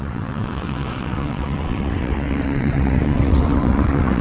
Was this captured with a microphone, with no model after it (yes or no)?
no